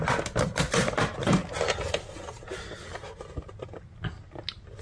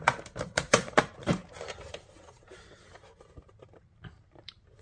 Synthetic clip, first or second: second